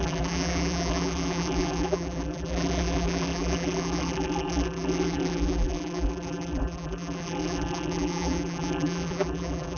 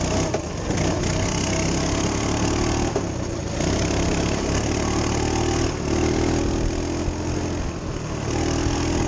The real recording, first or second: second